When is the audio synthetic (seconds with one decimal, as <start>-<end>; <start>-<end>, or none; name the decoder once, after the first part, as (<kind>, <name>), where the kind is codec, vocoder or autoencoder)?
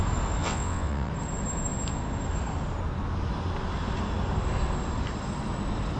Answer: 0.4-1.1 (vocoder, WaveNeXt)